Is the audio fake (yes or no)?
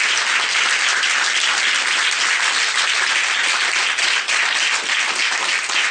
no